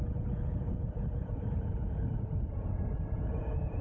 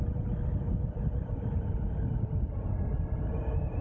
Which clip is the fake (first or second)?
first